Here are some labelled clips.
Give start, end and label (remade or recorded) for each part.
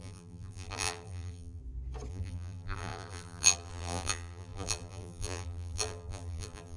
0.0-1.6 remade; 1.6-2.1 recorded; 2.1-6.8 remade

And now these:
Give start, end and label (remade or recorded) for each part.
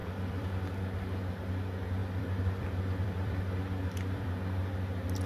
0.0-0.8 remade; 0.8-2.0 recorded; 2.0-4.3 remade; 4.3-5.3 recorded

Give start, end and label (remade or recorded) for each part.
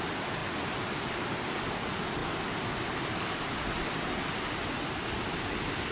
0.0-5.9 recorded